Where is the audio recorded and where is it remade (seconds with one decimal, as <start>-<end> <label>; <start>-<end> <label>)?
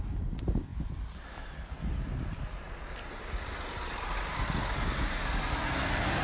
0.0-6.2 recorded